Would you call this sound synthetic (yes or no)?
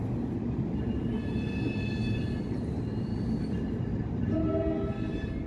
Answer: no